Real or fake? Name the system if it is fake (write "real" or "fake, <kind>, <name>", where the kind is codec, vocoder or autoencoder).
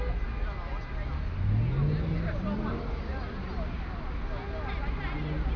real